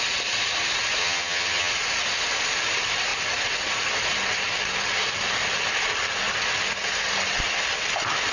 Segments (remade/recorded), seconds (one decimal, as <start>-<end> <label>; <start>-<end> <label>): 0.0-1.0 recorded; 1.0-1.7 remade; 1.7-8.3 recorded